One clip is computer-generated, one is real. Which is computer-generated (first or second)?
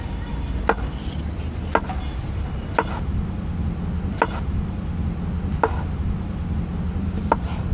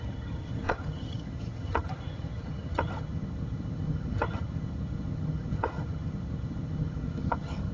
second